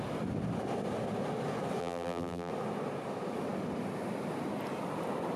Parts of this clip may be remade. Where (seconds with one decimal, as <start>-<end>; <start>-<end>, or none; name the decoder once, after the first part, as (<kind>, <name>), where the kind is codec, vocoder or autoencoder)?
1.8-2.5 (vocoder, BigVGAN v2)